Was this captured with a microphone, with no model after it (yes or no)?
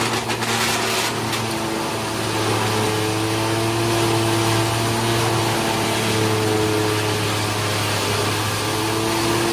yes